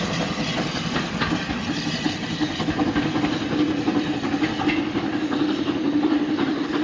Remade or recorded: recorded